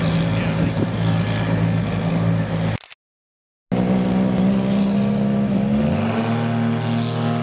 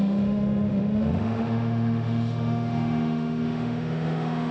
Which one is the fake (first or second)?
second